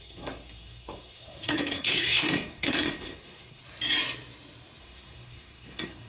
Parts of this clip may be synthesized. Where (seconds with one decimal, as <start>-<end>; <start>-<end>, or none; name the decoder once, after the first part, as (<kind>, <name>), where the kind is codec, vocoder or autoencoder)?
0.0-3.6 (codec, SNAC); 4.8-6.1